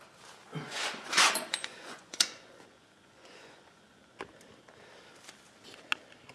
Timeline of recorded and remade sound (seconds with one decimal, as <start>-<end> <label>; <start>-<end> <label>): 0.0-0.4 recorded; 0.4-4.2 remade; 4.2-6.3 recorded